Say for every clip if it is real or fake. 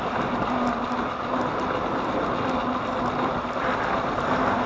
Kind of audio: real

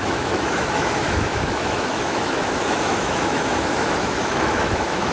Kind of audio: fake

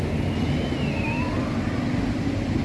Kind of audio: real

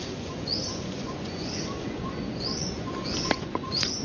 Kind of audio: fake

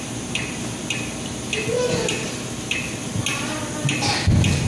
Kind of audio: real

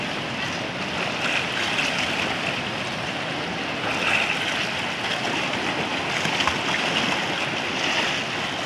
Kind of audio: real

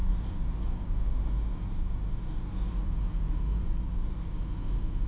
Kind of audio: real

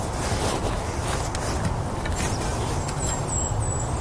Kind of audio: real